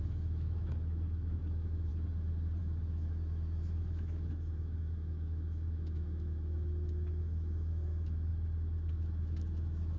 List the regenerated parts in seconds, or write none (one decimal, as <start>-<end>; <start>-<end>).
0.0-1.9; 2.6-8.3; 8.9-10.0